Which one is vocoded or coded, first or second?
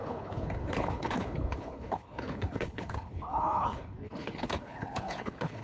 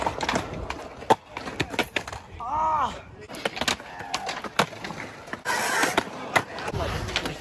first